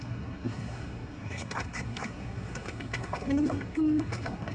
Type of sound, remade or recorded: remade